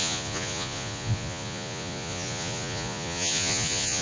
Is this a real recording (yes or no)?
no